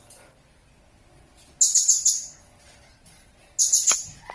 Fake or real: real